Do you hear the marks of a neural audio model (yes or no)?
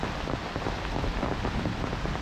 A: no